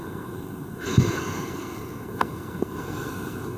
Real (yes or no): no